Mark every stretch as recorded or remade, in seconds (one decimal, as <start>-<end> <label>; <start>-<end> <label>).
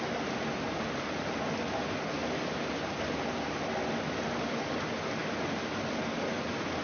0.0-6.8 recorded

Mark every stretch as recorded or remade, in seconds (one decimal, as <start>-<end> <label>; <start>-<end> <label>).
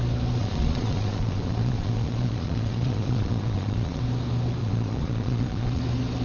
0.0-0.4 recorded; 0.4-4.0 remade; 4.0-4.6 recorded; 4.6-5.8 remade; 5.8-6.2 recorded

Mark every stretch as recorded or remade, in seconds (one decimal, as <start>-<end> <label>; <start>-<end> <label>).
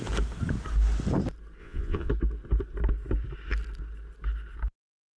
0.0-1.6 recorded; 1.6-2.1 remade; 2.1-5.2 recorded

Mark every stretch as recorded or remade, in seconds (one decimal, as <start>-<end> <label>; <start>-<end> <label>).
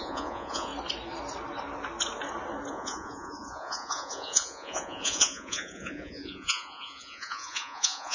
0.0-0.7 remade; 0.7-2.7 recorded; 2.7-8.1 remade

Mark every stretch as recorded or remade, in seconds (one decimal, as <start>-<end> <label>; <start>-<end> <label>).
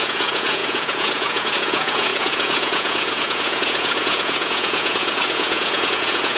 0.0-6.4 remade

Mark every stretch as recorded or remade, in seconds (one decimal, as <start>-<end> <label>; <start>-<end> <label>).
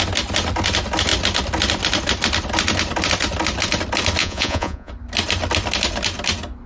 0.0-4.2 recorded; 4.2-4.9 remade; 4.9-6.7 recorded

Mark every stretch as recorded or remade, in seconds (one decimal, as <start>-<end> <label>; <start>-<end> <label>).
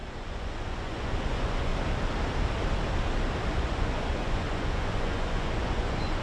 0.0-1.7 remade; 1.7-3.5 recorded; 3.5-6.2 remade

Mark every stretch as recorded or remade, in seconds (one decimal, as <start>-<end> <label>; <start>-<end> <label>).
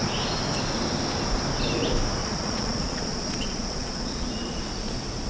0.0-2.2 recorded; 2.2-4.6 remade; 4.6-5.3 recorded